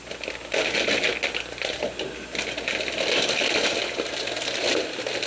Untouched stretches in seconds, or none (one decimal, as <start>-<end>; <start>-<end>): 0.0-5.3